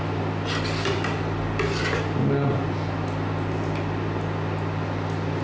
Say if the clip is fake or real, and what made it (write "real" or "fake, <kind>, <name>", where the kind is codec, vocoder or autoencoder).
real